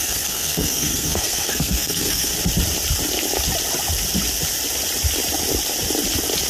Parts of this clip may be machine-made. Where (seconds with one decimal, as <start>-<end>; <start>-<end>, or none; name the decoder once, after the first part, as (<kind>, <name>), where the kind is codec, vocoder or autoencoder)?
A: 0.0-2.3 (codec, SNAC)